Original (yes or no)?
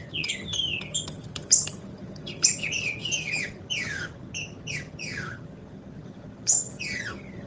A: no